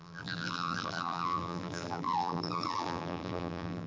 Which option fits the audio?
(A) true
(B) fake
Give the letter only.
B